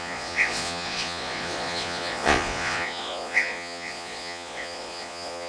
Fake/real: fake